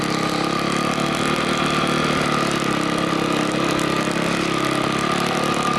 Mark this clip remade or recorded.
recorded